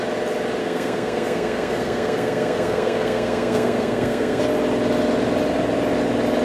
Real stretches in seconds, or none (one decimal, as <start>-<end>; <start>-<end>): 0.0-0.6; 4.4-6.4